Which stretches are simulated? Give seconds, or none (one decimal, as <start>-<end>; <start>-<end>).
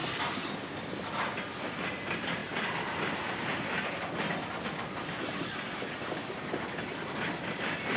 none